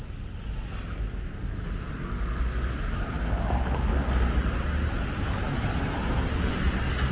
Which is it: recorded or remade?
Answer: recorded